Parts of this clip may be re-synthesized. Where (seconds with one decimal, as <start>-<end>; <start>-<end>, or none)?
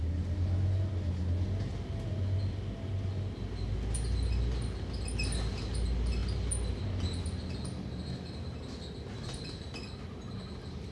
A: none